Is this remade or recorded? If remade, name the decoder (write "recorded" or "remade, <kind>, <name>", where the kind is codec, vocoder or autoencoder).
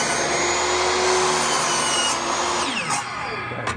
recorded